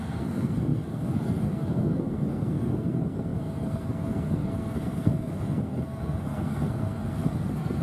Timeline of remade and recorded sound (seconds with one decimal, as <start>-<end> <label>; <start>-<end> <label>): 0.0-7.8 remade